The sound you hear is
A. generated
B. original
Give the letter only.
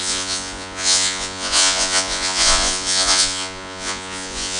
A